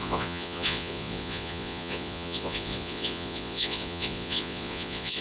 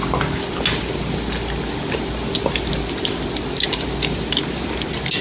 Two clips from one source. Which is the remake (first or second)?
first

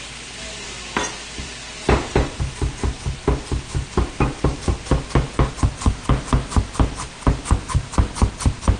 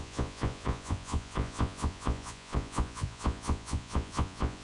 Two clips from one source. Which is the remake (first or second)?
second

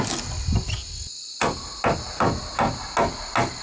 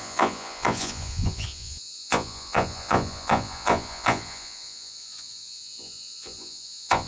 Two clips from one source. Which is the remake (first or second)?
second